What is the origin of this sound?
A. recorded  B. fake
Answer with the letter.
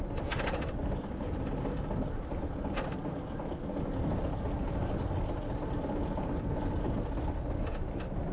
A